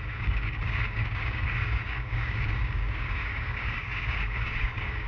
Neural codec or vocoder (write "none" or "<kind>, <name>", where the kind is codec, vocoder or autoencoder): codec, DAC